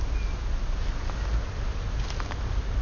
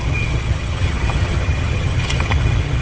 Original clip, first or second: first